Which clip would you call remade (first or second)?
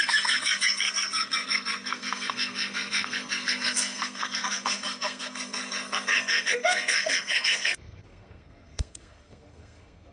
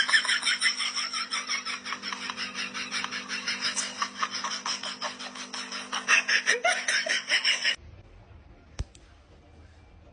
first